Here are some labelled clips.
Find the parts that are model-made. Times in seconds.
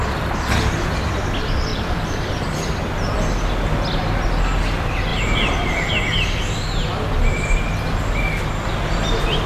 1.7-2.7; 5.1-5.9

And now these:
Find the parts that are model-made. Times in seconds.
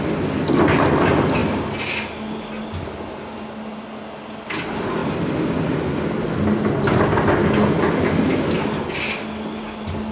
none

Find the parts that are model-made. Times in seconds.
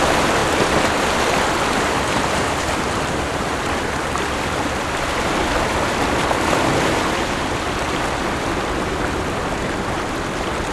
0.0-0.4; 1.5-10.7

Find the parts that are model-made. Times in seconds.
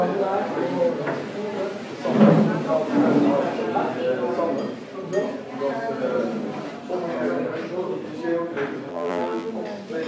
8.9-9.5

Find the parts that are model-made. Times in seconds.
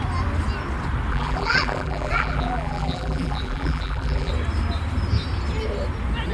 1.1-4.3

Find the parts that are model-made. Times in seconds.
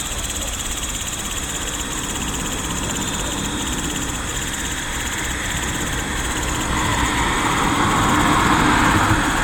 6.9-7.9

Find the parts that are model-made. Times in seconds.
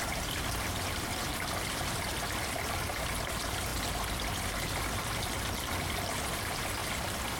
none